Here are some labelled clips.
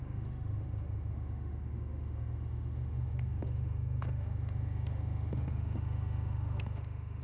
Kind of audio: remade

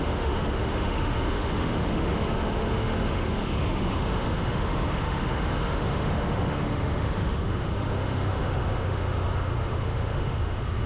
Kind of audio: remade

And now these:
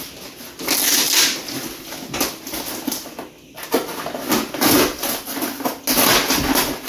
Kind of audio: recorded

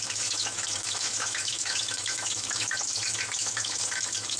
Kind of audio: remade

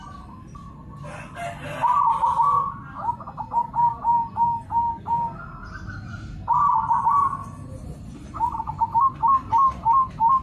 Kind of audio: recorded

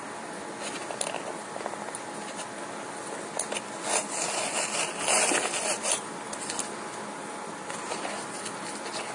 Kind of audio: recorded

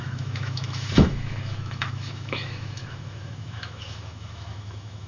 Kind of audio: remade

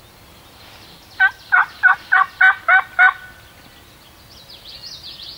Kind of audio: recorded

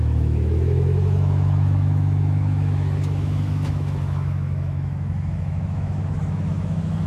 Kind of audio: remade